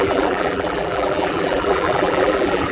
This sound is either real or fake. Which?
fake